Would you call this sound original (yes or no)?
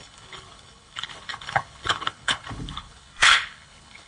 no